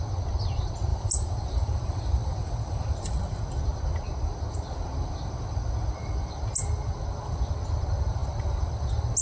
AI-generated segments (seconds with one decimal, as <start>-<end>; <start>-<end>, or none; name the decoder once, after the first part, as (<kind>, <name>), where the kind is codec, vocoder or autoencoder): 0.9-3.2 (vocoder, BigVGAN v2)